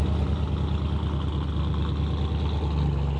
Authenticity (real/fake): real